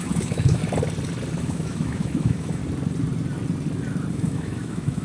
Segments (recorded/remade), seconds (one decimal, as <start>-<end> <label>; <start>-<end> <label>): 0.0-0.6 remade; 0.6-1.4 recorded; 1.4-2.6 remade; 2.6-4.1 recorded; 4.1-5.0 remade